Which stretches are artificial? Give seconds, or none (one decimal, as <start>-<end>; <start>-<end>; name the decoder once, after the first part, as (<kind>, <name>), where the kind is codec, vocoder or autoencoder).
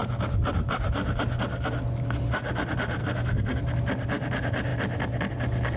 3.0-3.6 (codec, SNAC)